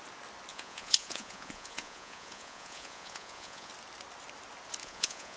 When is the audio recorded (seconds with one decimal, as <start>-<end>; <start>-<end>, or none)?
0.0-0.5; 3.7-4.8